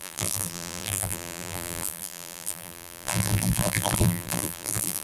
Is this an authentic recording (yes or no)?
no